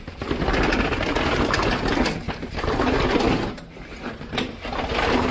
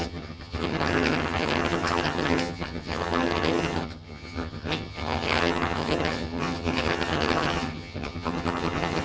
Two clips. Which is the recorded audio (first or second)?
first